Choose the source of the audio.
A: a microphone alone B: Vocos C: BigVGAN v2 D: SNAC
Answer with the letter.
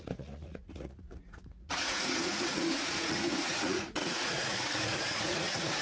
B